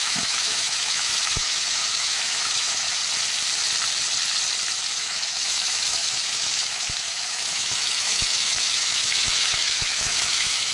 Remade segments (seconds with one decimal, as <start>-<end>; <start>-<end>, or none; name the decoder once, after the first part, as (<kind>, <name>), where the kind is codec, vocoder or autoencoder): 0.0-3.0 (autoencoder, DAC-VAE); 4.9-10.7